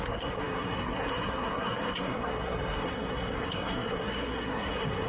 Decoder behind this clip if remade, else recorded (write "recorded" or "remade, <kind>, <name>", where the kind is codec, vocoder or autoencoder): remade, codec, SNAC